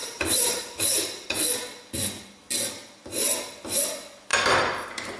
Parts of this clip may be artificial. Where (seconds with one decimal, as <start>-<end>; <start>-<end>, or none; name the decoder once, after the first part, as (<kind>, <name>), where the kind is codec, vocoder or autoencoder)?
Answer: 0.0-0.8 (vocoder, BigVGAN v2); 4.3-5.2